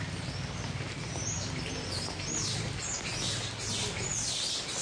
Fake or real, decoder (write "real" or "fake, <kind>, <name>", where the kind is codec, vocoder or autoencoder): real